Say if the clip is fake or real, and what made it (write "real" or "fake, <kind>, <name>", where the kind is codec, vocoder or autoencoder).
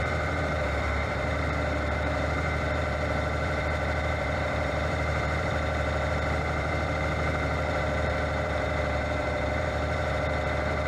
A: fake, vocoder, BigVGAN v2